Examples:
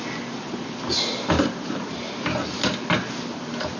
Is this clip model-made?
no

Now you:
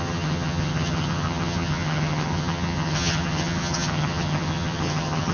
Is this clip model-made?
yes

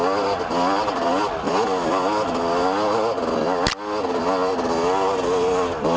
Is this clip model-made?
no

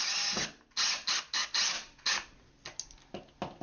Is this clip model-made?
no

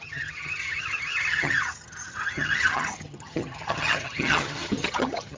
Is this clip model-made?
yes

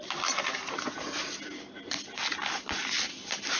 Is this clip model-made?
no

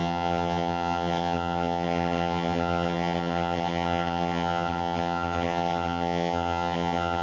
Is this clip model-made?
yes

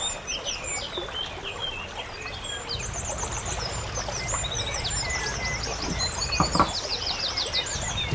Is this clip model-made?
no